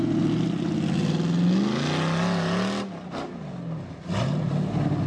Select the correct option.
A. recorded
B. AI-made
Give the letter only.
A